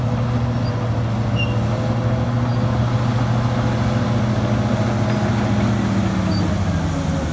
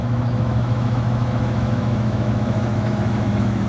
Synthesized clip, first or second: second